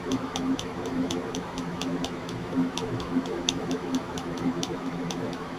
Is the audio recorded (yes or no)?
no